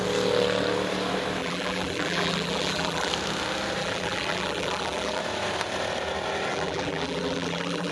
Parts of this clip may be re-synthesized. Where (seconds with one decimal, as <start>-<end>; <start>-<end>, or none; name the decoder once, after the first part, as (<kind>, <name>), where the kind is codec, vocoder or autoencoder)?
1.4-3.1 (vocoder, BigVGAN v2); 3.8-5.2; 6.5-7.9